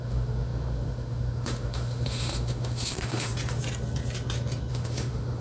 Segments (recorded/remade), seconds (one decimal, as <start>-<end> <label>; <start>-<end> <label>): 0.0-3.3 remade; 3.3-4.7 recorded; 4.7-5.4 remade